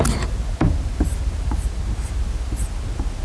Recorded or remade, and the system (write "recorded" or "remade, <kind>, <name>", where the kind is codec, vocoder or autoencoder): recorded